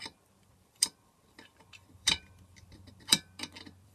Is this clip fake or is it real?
fake